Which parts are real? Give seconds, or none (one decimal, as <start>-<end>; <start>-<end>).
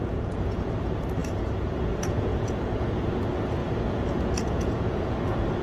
none